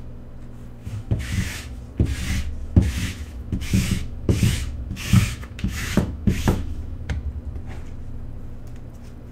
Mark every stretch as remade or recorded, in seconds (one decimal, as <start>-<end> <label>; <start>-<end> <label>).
0.0-0.8 recorded; 0.8-1.8 remade; 1.8-2.6 recorded; 2.6-7.1 remade; 7.1-9.3 recorded